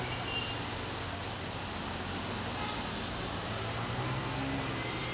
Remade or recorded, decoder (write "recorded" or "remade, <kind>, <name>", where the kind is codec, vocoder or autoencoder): recorded